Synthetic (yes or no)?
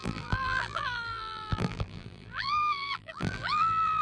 yes